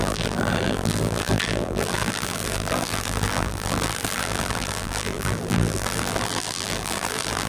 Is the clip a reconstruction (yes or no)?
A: yes